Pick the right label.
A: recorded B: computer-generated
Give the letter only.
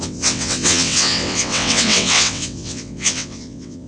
B